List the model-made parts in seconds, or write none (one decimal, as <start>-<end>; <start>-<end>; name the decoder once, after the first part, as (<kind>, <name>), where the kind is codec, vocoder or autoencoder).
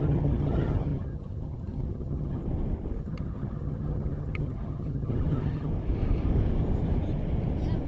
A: 0.0-2.4 (vocoder, HiFi-GAN); 3.0-5.7